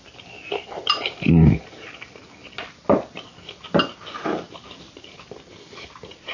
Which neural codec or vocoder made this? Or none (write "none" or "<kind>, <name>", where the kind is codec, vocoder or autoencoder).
none